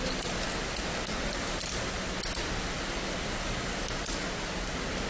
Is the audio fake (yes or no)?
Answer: no